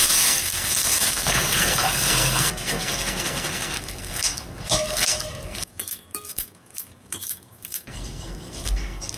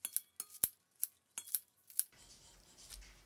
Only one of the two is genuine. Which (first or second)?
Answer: second